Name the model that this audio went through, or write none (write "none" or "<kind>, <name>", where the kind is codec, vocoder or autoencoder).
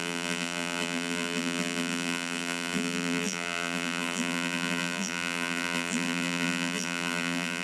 vocoder, BigVGAN v2